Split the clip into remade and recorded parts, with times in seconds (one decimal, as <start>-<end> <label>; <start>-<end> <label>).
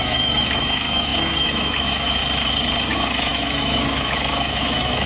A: 0.0-2.2 remade; 2.2-2.9 recorded; 2.9-5.1 remade